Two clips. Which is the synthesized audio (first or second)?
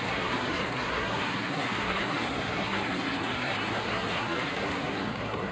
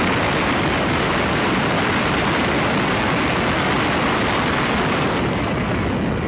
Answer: first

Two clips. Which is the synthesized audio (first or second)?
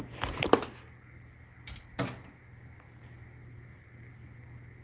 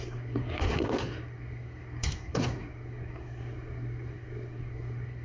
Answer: second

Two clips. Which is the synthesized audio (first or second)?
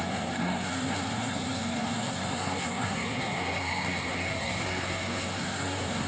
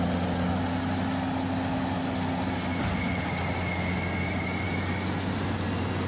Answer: first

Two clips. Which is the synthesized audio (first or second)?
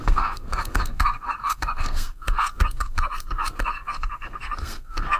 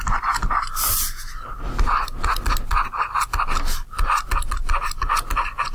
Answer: first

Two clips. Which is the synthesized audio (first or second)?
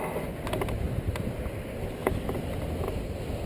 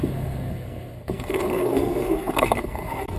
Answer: second